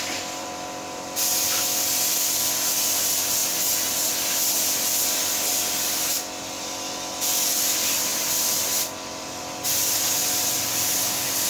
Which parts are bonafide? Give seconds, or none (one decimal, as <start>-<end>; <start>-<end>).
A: 0.0-11.5